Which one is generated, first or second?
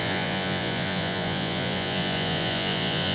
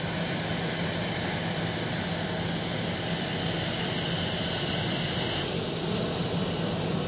first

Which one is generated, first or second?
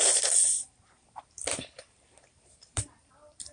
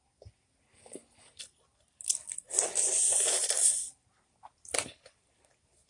first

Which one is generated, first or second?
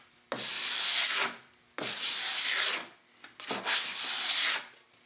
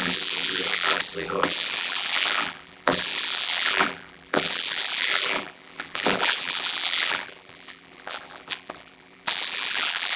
second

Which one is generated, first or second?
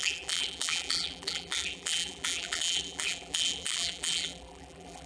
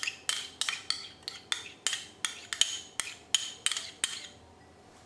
first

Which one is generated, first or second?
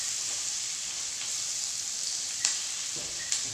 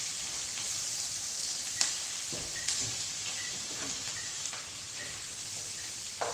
second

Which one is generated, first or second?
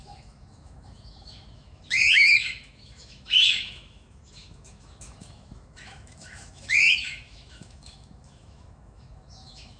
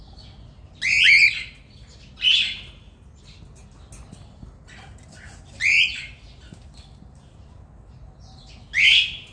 first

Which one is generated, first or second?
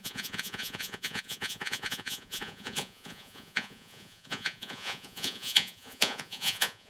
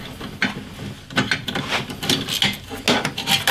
first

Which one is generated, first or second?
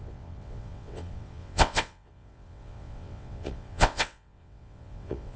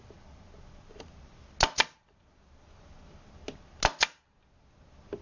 first